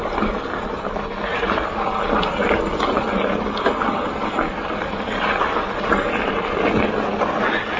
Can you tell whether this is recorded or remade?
recorded